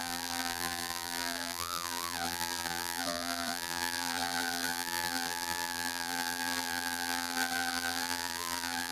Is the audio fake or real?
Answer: fake